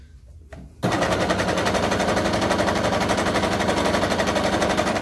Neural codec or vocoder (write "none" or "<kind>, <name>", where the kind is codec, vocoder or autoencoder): none